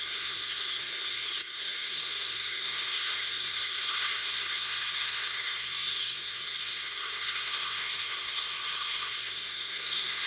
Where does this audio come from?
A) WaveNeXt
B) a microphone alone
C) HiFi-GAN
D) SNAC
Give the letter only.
D